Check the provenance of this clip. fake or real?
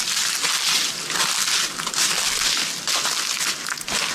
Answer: real